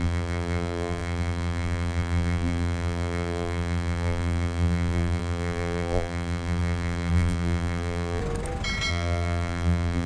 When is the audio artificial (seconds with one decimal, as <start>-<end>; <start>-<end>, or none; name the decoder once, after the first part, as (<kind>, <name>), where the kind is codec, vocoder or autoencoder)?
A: 0.0-8.2 (vocoder, BigVGAN v2); 8.9-10.1